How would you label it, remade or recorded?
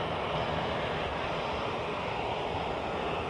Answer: recorded